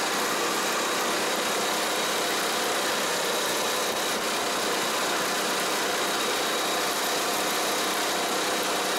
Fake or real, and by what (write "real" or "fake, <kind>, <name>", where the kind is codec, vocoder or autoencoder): real